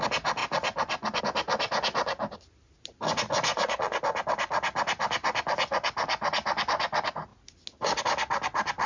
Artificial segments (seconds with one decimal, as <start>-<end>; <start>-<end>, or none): 3.5-4.0